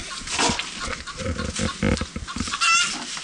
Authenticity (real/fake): real